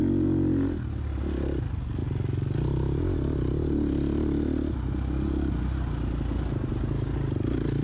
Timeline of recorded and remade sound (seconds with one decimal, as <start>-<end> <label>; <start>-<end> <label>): 0.0-7.8 recorded